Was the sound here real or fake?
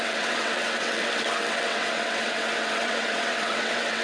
fake